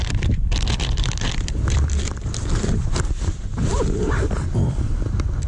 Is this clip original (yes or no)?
no